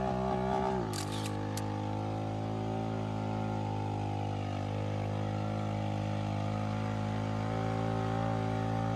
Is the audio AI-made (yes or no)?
no